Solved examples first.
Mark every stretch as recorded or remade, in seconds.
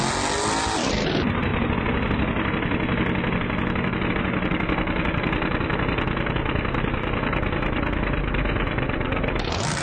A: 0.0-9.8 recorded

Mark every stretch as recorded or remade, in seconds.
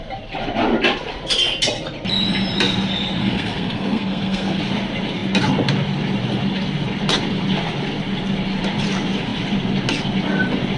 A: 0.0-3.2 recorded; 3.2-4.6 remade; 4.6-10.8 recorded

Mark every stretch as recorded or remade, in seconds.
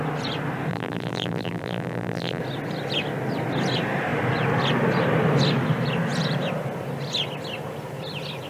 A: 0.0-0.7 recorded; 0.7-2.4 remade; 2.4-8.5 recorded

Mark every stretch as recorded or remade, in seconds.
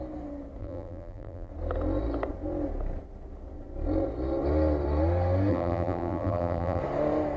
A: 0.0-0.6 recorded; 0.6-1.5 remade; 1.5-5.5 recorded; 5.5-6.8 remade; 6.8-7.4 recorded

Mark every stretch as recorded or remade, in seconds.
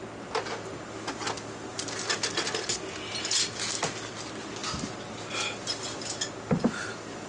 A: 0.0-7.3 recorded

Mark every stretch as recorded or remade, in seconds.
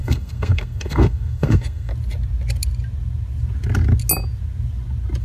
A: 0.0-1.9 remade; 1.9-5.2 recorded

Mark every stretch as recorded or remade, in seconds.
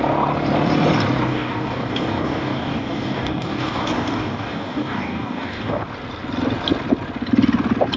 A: 0.0-1.3 recorded; 1.3-5.8 remade; 5.8-8.0 recorded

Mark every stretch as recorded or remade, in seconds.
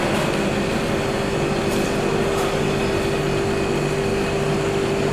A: 0.0-5.1 recorded